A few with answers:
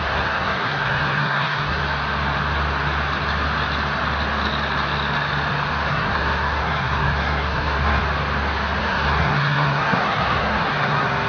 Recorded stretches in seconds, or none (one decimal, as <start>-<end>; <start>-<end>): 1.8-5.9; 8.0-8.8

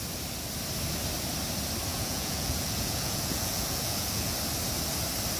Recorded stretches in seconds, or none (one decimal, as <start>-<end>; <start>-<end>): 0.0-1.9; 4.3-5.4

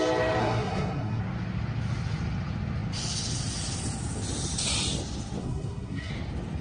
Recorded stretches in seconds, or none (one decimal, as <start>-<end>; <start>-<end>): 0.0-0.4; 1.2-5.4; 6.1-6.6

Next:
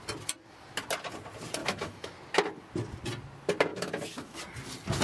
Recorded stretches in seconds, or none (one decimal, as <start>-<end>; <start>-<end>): 0.0-1.6; 2.1-3.7; 4.4-5.0

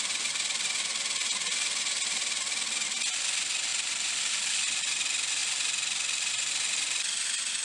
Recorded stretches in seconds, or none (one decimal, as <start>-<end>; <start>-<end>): 0.0-7.6

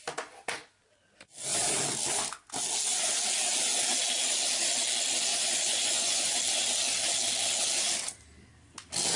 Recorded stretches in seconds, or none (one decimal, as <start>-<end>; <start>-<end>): 0.0-5.3; 6.4-9.2